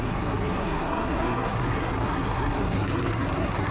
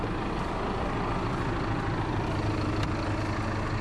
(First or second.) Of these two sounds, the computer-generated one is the first